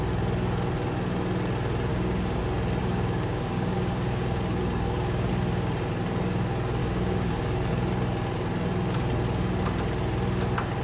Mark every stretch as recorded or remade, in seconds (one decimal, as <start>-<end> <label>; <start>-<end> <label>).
0.0-1.9 recorded; 1.9-2.4 remade; 2.4-2.8 recorded; 2.8-5.3 remade; 5.3-6.8 recorded; 6.8-7.7 remade; 7.7-10.8 recorded